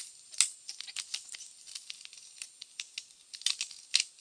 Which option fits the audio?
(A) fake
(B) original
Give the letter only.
B